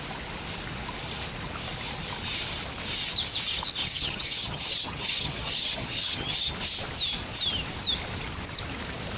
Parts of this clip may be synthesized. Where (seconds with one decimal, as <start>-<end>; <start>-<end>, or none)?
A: 3.8-6.5